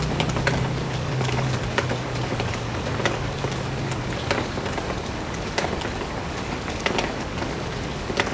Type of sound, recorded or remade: remade